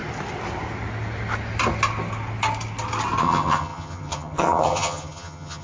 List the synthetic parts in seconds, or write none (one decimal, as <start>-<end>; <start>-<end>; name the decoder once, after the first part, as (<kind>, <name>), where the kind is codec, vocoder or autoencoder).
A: 3.2-5.6 (vocoder, HiFi-GAN)